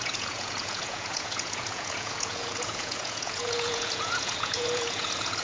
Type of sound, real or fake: fake